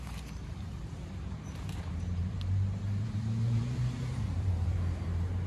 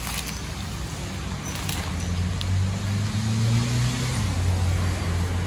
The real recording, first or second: second